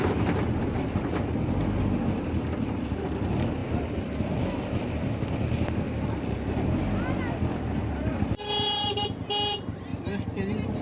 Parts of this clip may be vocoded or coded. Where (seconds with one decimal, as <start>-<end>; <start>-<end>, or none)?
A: none